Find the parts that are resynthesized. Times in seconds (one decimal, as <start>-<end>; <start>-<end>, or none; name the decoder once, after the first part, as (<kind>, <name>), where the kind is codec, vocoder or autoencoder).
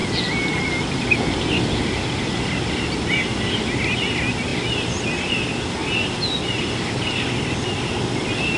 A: none